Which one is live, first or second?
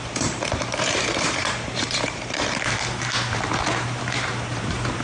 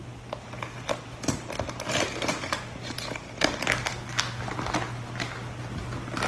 second